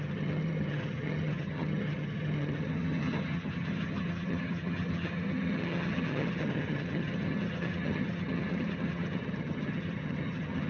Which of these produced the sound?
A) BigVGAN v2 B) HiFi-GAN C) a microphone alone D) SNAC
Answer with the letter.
B